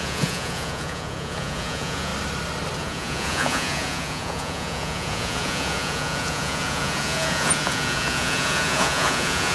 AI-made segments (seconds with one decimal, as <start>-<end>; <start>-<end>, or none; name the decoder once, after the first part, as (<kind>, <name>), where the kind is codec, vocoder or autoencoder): 0.0-2.1 (vocoder, Vocos); 2.8-9.5